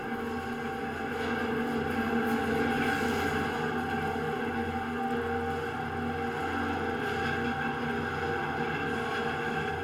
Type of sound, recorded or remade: recorded